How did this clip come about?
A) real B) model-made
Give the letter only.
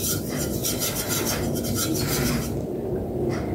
A